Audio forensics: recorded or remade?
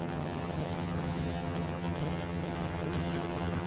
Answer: remade